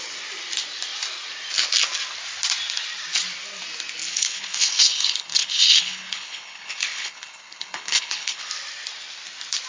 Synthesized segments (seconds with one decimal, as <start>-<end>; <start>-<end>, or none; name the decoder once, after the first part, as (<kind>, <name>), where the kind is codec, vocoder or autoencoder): 4.1-8.5 (codec, HILCodec)

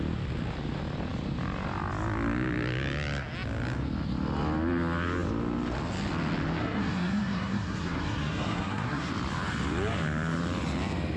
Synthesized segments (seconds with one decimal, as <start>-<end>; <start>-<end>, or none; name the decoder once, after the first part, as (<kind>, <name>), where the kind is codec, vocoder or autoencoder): 6.6-9.1 (codec, SNAC)

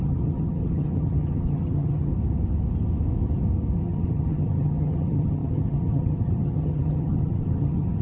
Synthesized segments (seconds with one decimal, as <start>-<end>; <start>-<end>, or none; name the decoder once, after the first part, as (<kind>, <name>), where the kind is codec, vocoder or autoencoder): 0.0-2.1 (vocoder, HiFi-GAN); 3.8-8.0

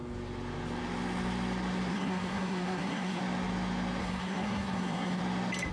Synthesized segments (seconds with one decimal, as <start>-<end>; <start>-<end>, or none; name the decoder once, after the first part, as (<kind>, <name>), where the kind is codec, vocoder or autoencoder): 1.9-3.2 (codec, SNAC); 4.0-5.2

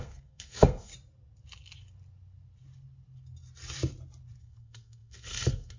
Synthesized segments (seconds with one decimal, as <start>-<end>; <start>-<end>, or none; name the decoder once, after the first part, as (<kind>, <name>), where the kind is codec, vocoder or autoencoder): 0.0-0.9 (codec, SNAC); 4.4-5.8